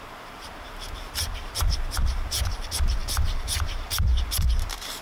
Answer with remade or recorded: remade